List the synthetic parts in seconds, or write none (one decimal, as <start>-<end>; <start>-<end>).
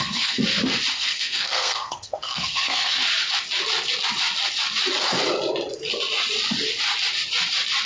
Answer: 0.0-0.4; 0.9-3.0